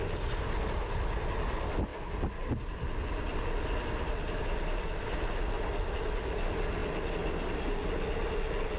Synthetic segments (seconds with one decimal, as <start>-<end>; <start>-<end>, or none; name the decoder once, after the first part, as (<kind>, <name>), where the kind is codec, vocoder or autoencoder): none